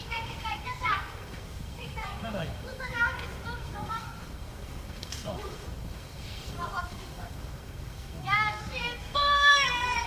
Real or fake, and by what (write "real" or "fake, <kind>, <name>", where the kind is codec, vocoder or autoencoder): fake, codec, SNAC